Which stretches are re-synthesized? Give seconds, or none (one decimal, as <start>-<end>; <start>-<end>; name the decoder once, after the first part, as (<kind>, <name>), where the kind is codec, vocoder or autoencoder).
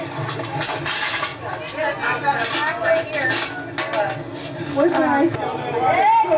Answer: none